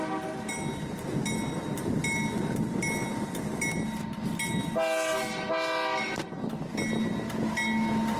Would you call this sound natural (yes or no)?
yes